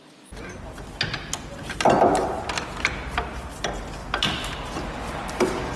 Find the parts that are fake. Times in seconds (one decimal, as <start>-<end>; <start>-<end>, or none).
none